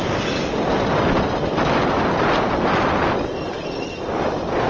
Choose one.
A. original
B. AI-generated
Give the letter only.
A